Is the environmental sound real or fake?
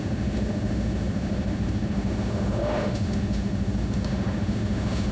fake